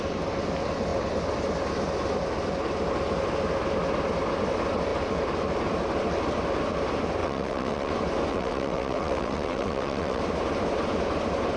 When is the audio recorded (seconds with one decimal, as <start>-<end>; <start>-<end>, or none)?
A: 0.0-7.2; 7.9-8.3; 10.2-11.6